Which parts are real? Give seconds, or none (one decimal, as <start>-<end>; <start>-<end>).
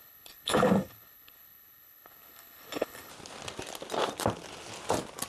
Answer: 3.1-5.3